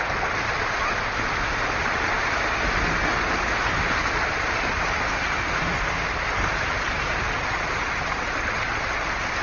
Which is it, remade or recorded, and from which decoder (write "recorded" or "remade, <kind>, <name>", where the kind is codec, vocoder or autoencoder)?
recorded